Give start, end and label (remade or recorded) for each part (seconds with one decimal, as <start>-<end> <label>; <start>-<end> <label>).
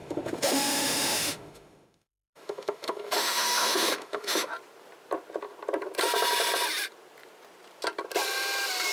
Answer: 0.0-4.5 remade; 4.5-8.9 recorded